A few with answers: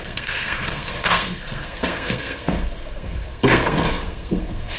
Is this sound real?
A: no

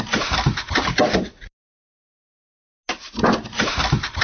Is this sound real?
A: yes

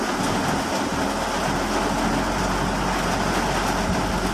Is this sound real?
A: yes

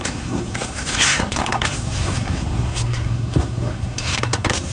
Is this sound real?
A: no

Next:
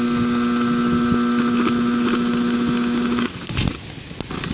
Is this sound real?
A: yes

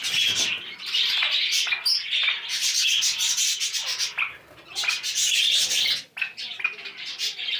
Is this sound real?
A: yes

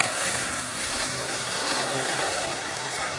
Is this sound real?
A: no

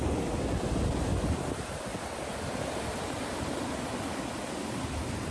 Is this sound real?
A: yes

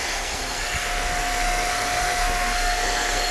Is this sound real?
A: no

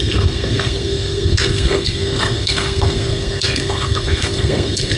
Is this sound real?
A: no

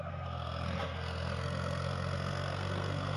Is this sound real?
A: no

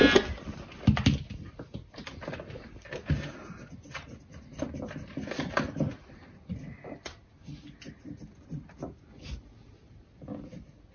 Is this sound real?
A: yes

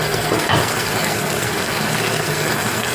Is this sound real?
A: no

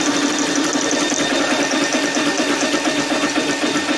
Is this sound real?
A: yes